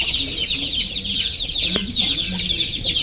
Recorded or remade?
recorded